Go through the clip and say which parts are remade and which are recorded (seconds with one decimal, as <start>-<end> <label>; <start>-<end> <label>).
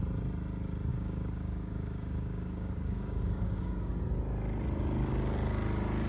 0.0-0.9 recorded; 0.9-3.9 remade; 3.9-6.1 recorded